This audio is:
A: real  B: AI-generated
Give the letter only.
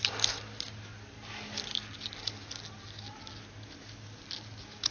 A